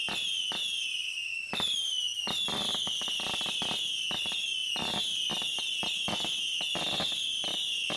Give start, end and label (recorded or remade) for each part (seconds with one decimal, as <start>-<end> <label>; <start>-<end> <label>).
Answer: 0.0-8.0 recorded